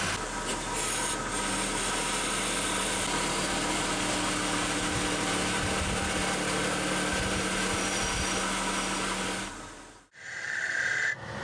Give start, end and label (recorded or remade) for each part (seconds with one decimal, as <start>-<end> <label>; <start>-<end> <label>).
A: 0.0-11.4 recorded